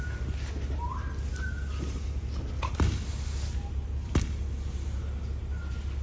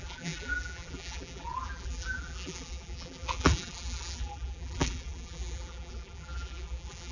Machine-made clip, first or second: second